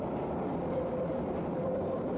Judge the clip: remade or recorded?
recorded